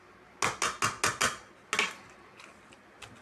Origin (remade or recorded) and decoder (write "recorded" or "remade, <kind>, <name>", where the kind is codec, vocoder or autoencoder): recorded